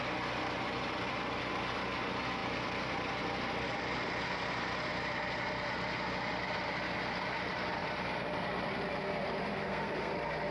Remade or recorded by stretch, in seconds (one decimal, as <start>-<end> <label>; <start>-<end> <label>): 0.0-9.5 recorded; 9.5-10.1 remade; 10.1-10.5 recorded